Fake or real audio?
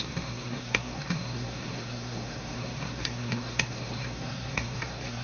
fake